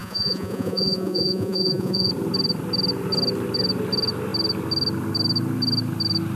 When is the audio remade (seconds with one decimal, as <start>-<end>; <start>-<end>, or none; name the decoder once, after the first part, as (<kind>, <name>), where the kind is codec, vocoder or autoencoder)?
0.0-2.1 (vocoder, Vocos)